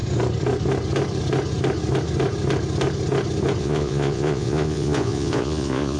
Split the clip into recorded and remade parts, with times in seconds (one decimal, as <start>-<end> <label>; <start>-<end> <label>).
0.0-3.6 recorded; 3.6-6.0 remade